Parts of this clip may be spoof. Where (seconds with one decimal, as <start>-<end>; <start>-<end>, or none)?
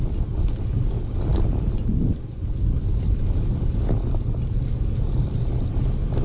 none